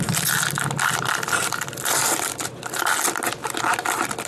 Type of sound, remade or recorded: recorded